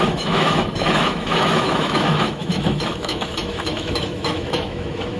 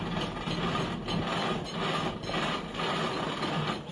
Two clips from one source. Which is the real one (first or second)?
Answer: second